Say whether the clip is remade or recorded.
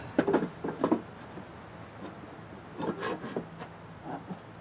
recorded